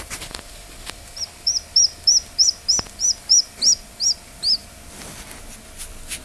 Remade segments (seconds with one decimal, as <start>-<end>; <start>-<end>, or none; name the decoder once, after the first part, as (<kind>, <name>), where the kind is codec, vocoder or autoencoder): 0.0-4.6 (vocoder, BigVGAN v2); 5.8-6.2